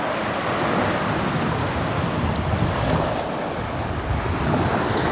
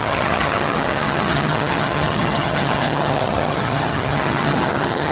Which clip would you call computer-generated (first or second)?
second